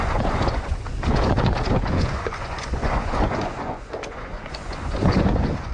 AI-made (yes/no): yes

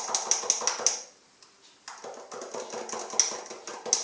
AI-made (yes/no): no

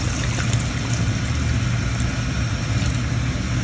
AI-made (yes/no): no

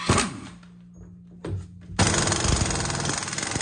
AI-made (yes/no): no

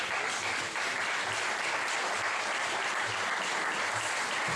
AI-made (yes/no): no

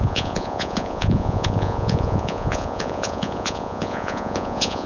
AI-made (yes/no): yes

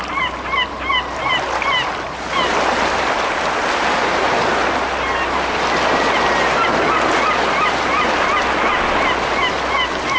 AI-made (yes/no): no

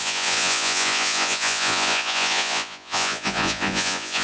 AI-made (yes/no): yes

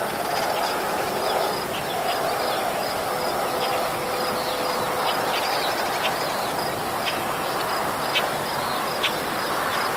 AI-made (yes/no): no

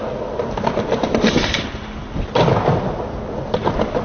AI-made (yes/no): no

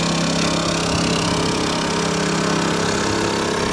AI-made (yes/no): no